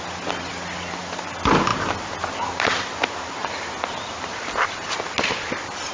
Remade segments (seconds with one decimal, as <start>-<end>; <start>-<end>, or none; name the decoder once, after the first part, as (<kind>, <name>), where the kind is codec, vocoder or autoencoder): none